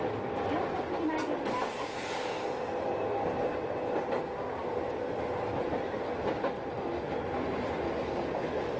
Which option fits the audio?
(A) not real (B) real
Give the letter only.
B